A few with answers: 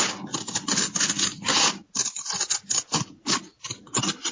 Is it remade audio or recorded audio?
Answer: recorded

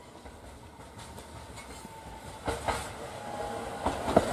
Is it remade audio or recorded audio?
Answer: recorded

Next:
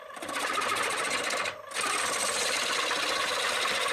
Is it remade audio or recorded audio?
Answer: recorded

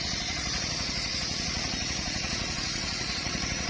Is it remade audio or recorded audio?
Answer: remade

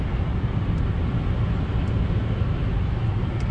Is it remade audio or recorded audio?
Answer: recorded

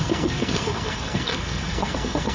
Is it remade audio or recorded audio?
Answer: remade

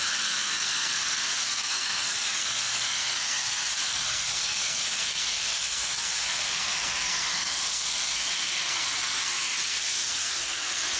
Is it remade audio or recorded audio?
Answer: remade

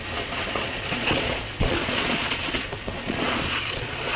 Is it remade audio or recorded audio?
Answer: remade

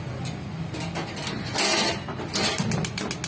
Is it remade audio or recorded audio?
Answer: recorded